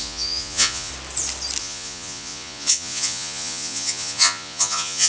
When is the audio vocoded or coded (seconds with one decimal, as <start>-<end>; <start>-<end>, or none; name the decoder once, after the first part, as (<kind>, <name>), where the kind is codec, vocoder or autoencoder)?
0.0-0.9 (vocoder, Vocos); 1.6-5.1